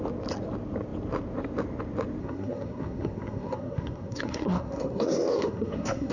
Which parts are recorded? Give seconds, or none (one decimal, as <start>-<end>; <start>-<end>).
0.0-2.2